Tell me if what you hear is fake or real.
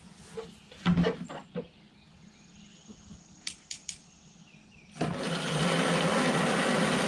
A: real